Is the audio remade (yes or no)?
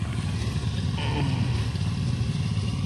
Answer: no